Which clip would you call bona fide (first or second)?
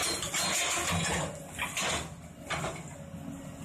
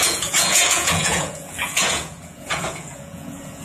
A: first